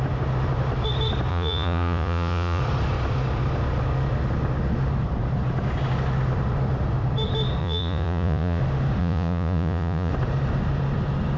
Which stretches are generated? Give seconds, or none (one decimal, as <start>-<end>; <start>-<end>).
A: 1.3-2.6; 7.6-8.6; 9.0-10.1